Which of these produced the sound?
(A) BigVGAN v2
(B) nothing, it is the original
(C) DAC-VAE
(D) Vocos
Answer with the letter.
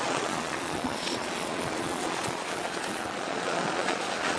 D